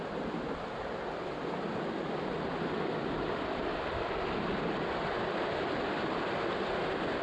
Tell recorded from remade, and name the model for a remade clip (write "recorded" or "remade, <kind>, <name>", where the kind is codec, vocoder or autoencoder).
recorded